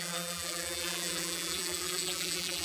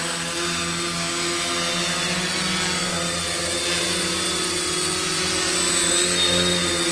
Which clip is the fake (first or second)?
first